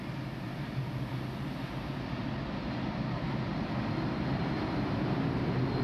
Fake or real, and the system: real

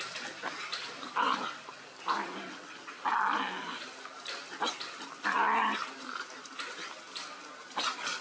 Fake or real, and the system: real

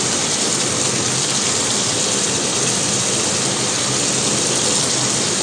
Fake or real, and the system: real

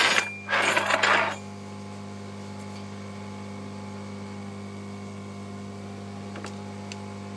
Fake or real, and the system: real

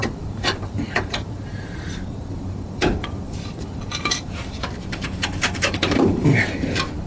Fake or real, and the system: fake, vocoder, BigVGAN v2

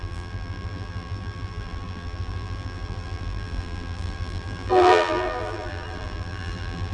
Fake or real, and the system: fake, vocoder, BigVGAN v2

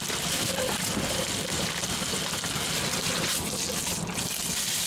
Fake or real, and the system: real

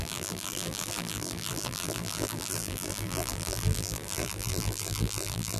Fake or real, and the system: fake, vocoder, BigVGAN v2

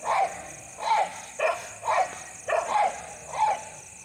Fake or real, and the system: real